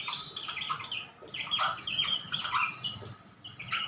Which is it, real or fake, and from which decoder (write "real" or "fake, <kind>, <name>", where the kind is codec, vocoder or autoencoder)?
real